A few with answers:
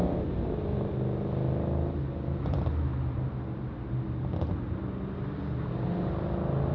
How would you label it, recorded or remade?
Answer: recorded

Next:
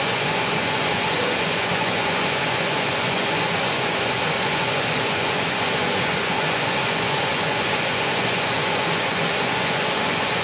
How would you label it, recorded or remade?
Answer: remade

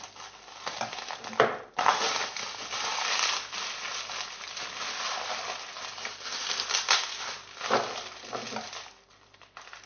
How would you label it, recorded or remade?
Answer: recorded